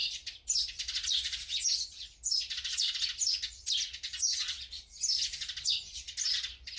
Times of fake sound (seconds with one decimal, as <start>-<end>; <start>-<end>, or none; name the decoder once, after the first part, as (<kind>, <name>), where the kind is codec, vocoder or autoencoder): none